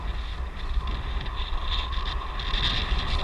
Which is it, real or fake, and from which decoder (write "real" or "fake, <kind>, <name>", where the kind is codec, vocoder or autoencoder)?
real